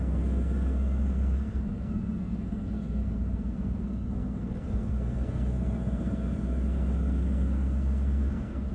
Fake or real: fake